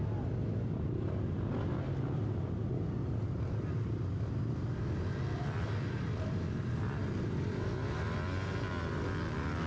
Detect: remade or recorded recorded